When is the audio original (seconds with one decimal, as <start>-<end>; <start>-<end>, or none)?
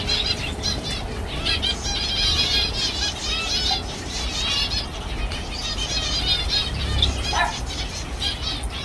0.0-8.8